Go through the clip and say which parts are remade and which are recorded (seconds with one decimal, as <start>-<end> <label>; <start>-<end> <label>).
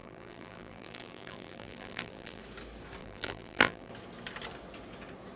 0.0-2.4 remade; 2.4-3.0 recorded; 3.0-3.9 remade; 3.9-5.4 recorded